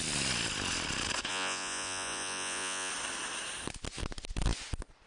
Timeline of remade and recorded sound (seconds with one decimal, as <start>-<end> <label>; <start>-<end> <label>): 0.0-1.3 recorded; 1.3-2.9 remade; 2.9-5.1 recorded